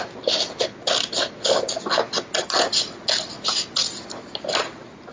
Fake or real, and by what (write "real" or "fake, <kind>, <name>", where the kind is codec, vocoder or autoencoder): real